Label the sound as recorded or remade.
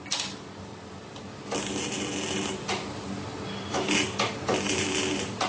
recorded